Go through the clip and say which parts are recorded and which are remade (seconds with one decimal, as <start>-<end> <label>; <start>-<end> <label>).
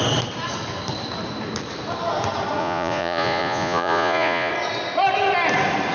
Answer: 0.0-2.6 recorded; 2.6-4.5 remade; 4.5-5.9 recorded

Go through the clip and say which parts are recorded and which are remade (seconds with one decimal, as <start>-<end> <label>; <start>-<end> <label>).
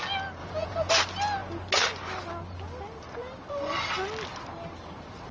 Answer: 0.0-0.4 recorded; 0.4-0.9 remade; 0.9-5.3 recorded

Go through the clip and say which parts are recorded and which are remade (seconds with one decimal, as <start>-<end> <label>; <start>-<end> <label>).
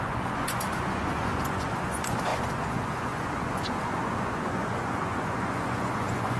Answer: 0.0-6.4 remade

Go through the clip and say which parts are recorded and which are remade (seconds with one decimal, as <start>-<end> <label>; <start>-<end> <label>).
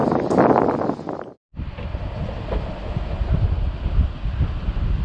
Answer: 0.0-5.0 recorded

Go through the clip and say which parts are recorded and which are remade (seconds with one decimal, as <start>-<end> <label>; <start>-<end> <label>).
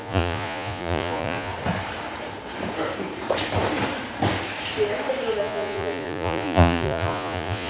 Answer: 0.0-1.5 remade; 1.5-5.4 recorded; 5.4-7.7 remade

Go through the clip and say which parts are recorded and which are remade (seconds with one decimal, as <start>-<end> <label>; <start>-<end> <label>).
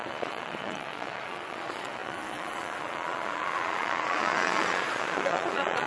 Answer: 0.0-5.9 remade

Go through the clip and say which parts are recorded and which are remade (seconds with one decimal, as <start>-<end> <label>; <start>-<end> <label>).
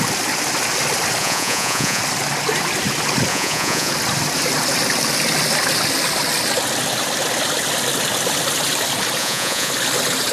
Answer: 0.0-1.2 recorded; 1.2-2.0 remade; 2.0-3.3 recorded; 3.3-3.9 remade; 3.9-9.2 recorded; 9.2-9.7 remade; 9.7-10.3 recorded